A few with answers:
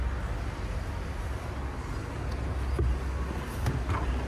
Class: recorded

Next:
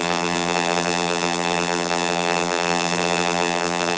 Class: remade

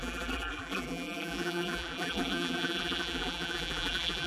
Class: remade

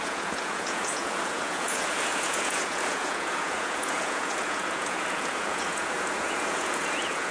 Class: remade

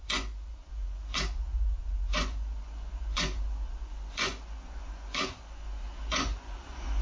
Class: remade